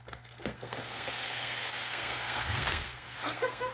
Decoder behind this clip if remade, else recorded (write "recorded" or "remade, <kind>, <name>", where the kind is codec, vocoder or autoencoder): remade, codec, SNAC